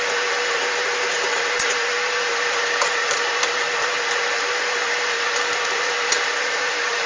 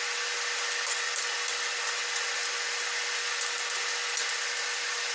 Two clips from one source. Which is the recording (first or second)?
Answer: second